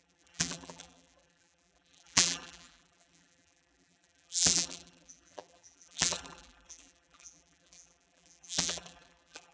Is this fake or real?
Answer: fake